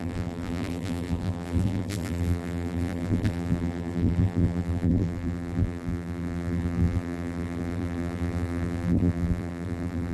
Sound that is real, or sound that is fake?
fake